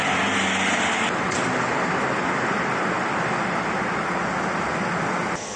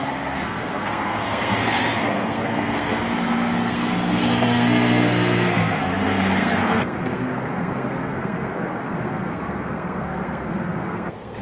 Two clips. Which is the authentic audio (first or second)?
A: first